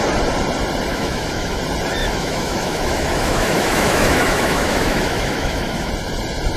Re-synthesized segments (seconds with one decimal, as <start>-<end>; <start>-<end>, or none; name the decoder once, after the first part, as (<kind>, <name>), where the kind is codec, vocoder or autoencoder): 0.9-1.6 (autoencoder, DAC-VAE); 2.0-5.9